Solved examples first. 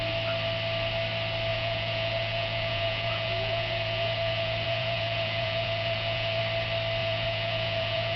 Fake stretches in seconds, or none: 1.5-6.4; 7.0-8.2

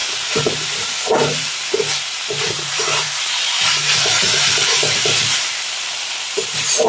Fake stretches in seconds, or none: 0.5-1.6; 2.3-6.9

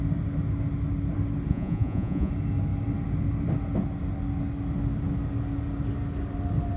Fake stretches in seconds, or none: 1.5-2.3

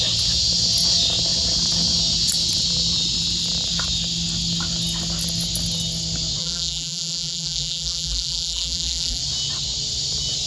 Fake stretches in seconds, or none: 6.4-9.2

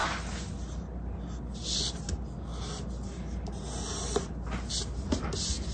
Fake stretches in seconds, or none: none

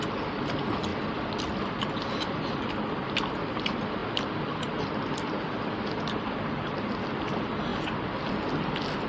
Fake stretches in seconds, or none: none